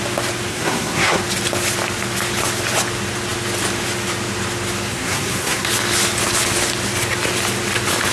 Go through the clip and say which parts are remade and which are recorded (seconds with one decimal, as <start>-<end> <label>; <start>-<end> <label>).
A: 0.0-0.5 recorded; 0.5-1.2 remade; 1.2-4.9 recorded; 4.9-5.7 remade; 5.7-8.1 recorded